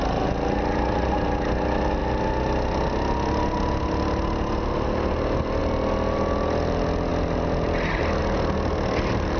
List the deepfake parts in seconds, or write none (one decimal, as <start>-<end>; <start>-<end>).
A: none